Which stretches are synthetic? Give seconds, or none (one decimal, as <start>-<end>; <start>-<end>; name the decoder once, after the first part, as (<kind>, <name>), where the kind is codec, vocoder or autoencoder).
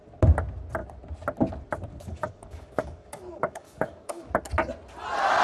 1.9-4.3 (codec, DAC)